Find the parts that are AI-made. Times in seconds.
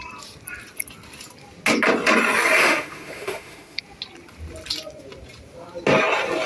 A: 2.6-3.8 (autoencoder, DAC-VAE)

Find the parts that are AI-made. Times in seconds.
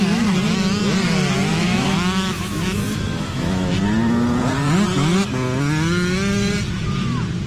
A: 1.5-3.7 (autoencoder, DAC-VAE)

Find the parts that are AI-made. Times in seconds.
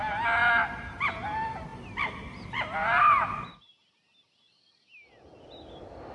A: none